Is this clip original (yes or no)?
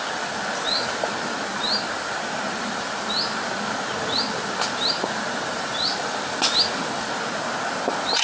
yes